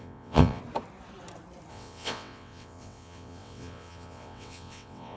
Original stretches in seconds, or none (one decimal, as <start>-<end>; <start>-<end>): 0.6-1.7